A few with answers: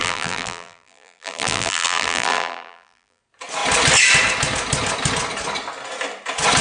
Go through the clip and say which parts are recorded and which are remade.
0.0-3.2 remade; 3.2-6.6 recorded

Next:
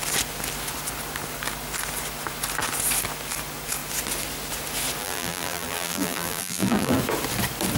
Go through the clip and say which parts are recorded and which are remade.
0.0-5.0 recorded; 5.0-7.0 remade; 7.0-7.8 recorded

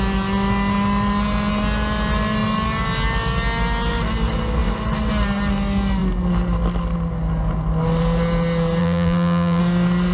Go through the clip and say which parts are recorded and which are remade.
0.0-8.8 recorded; 8.8-9.6 remade; 9.6-10.1 recorded

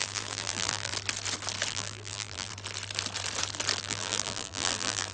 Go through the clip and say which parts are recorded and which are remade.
0.0-0.9 remade; 0.9-1.7 recorded; 1.7-2.5 remade; 2.5-3.8 recorded; 3.8-5.1 remade

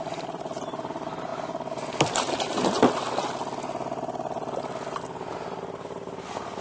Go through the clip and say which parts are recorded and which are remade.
0.0-6.6 recorded

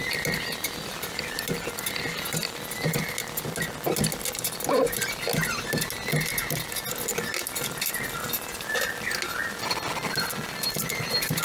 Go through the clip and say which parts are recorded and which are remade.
0.0-11.4 recorded

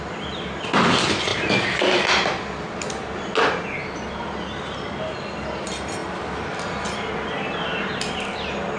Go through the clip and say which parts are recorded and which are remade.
0.0-1.3 recorded; 1.3-2.8 remade; 2.8-3.8 recorded; 3.8-4.6 remade; 4.6-8.8 recorded

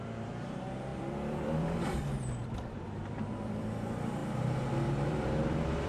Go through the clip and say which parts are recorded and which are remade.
0.0-4.2 remade; 4.2-5.1 recorded; 5.1-5.9 remade